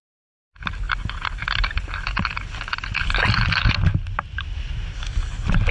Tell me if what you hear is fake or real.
real